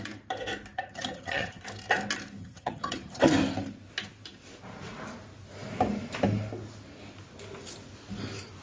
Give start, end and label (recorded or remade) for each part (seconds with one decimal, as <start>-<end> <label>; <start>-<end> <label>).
0.0-0.7 recorded; 0.7-1.6 remade; 1.6-2.4 recorded; 2.4-3.2 remade; 3.2-8.6 recorded